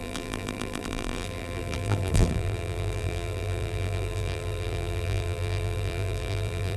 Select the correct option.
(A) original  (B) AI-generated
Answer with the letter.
B